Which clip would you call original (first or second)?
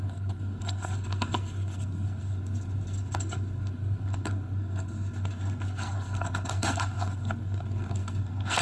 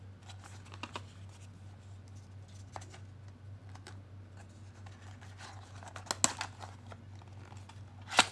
second